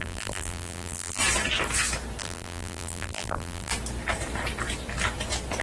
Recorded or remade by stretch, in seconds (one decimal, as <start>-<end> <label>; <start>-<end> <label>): 0.0-1.2 remade; 1.2-2.2 recorded; 2.2-3.7 remade; 3.7-5.6 recorded